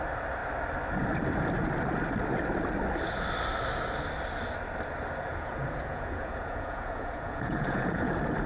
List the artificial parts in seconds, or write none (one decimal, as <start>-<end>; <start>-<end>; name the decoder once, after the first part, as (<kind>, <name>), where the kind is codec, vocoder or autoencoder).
5.3-8.1 (vocoder, Vocos)

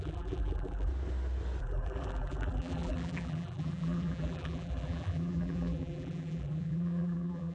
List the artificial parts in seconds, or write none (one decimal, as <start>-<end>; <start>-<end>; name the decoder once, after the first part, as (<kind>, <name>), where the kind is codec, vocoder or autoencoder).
0.0-0.9 (vocoder, BigVGAN v2); 1.6-7.5

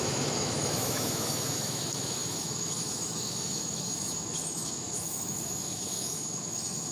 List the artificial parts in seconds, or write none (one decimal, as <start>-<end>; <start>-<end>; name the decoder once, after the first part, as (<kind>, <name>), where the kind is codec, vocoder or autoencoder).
0.0-6.9 (autoencoder, DAC-VAE)

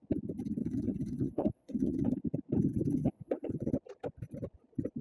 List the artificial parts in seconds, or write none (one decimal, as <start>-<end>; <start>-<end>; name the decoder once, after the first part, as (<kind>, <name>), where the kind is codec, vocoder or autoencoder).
0.6-2.2 (vocoder, WaveNeXt); 3.0-3.7

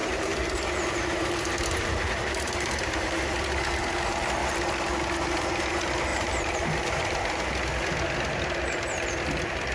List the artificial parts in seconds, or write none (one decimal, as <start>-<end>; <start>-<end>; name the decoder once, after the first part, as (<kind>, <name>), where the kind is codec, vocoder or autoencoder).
0.0-3.2 (vocoder, BigVGAN v2); 4.4-4.9; 6.1-7.2

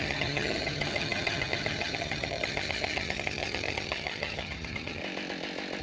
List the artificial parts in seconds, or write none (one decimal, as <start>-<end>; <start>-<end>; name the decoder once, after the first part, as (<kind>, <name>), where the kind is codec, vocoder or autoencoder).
0.0-5.0 (vocoder, HiFi-GAN)